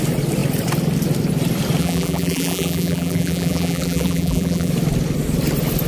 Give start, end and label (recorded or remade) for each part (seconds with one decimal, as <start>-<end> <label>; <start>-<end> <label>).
0.0-1.8 recorded; 1.8-4.7 remade; 4.7-5.9 recorded